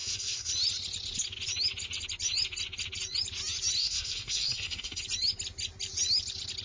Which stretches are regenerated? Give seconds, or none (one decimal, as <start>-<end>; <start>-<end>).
0.0-0.5; 3.8-5.0